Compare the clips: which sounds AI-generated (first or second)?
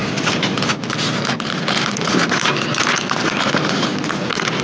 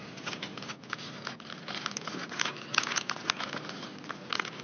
first